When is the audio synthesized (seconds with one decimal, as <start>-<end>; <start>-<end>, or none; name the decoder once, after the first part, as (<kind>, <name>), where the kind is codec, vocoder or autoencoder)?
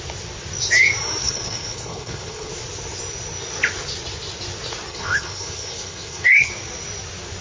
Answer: 1.2-2.5 (codec, HILCodec); 4.9-6.5